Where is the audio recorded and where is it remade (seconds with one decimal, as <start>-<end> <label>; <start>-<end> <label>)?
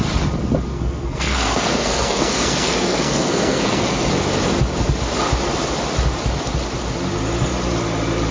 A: 0.0-0.7 recorded; 0.7-4.1 remade; 4.1-8.3 recorded